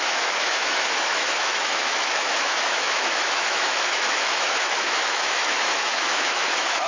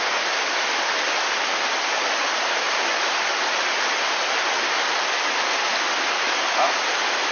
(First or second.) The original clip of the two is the second